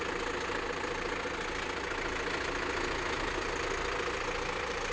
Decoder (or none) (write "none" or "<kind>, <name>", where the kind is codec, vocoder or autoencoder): none